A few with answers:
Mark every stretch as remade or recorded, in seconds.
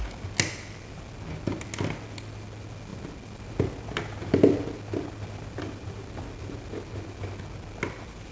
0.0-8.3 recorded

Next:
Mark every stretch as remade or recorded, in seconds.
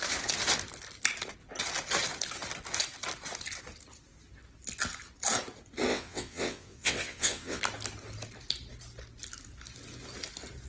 0.0-5.9 recorded; 5.9-7.6 remade; 7.6-10.7 recorded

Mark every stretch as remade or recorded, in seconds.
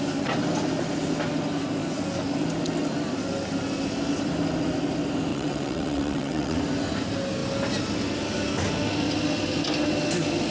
0.0-5.3 recorded; 5.3-6.6 remade; 6.6-10.5 recorded